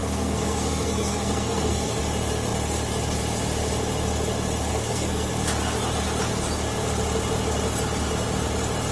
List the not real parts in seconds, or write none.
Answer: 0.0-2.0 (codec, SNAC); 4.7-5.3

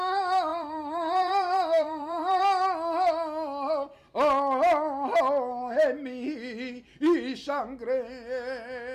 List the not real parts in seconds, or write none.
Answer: 0.5-2.4 (vocoder, BigVGAN v2)

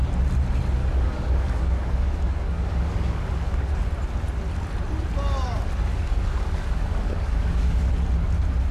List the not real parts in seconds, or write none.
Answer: 0.8-3.7 (codec, DAC); 5.9-7.9

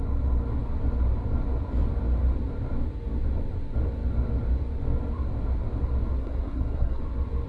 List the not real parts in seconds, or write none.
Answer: 6.2-7.0 (codec, SNAC)